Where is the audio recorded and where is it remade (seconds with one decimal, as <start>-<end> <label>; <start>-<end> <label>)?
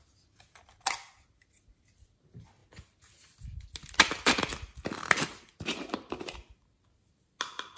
0.0-7.8 recorded